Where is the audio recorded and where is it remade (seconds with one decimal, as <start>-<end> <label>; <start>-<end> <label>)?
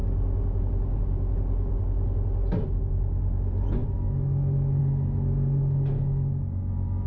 0.0-7.1 recorded